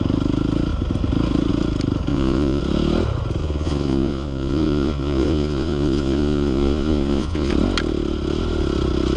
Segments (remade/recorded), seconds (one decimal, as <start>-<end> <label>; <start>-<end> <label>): 0.0-2.1 recorded; 2.1-2.6 remade; 2.6-3.4 recorded; 3.4-7.5 remade; 7.5-9.2 recorded